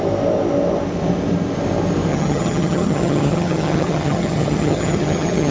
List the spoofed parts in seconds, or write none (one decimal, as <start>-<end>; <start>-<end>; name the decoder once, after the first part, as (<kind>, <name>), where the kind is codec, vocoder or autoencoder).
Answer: 2.1-5.5 (vocoder, HiFi-GAN)